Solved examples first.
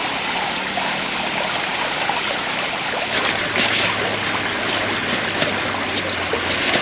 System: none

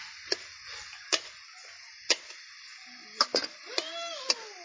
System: none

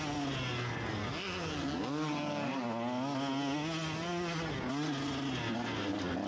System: none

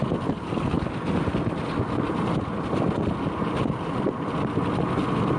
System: none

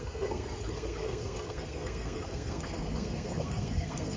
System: codec, SNAC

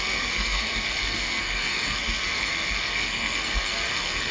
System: codec, SNAC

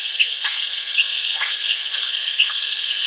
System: codec, SNAC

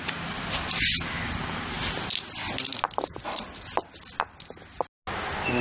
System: none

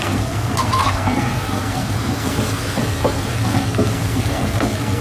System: codec, SNAC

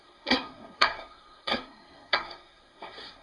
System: codec, SNAC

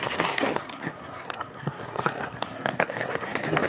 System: codec, SNAC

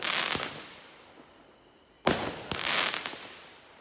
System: none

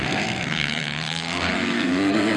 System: codec, SNAC